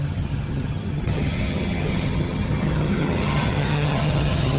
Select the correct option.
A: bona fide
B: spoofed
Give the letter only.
B